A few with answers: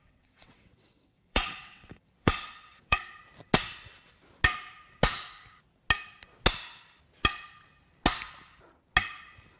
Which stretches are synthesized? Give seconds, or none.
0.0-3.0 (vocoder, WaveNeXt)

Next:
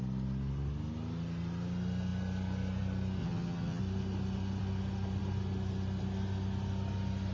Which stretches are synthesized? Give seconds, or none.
3.2-3.8 (vocoder, HiFi-GAN)

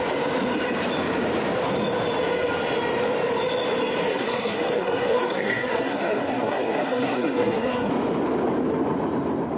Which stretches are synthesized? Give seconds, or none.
4.1-7.9 (codec, SNAC)

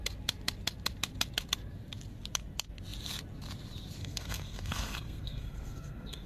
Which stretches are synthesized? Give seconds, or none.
4.0-6.3 (codec, SNAC)

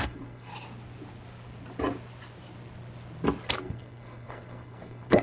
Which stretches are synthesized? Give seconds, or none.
0.0-0.5 (codec, SNAC); 3.6-5.2